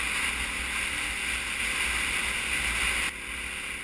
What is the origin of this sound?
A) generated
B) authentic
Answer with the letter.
B